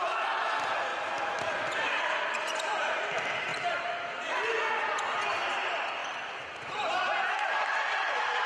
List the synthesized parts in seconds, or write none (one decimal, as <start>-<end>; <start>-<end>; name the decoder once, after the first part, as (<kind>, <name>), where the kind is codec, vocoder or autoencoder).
0.9-2.0 (vocoder, BigVGAN v2); 3.5-4.3; 6.0-8.5